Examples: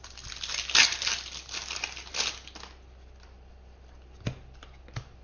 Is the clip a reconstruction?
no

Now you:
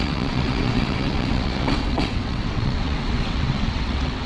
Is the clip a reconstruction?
yes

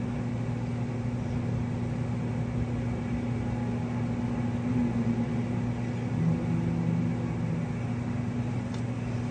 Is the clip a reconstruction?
no